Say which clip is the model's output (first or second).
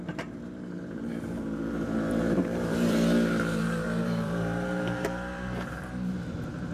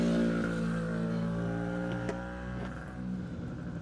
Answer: first